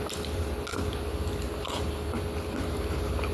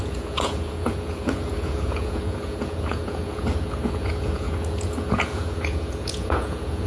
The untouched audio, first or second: first